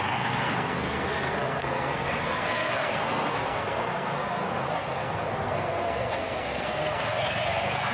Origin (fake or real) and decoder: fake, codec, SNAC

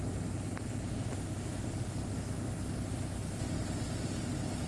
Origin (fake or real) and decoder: real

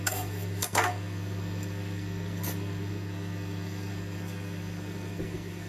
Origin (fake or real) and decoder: fake, codec, SNAC